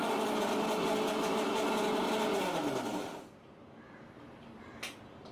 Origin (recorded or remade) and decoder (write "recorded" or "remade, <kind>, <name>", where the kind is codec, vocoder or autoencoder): recorded